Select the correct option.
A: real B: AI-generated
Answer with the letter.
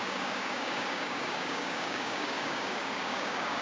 B